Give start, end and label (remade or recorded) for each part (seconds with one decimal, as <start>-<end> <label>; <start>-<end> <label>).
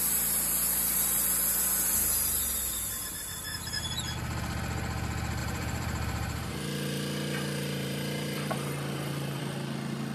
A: 0.0-5.4 recorded; 5.4-9.4 remade; 9.4-10.1 recorded